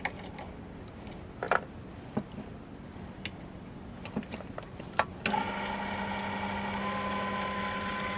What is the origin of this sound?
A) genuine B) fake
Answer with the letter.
A